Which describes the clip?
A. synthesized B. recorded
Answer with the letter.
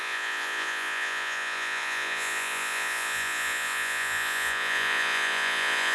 A